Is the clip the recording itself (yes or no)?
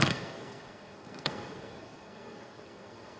no